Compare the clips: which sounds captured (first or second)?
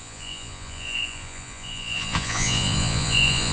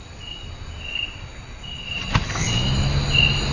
second